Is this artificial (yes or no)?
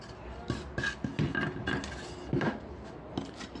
no